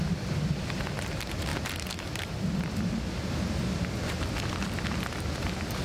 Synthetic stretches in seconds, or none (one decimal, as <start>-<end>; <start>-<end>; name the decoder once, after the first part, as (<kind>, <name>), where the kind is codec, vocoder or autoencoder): none